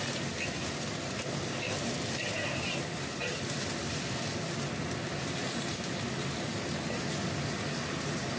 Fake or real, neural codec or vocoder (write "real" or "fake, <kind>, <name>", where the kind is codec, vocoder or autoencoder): real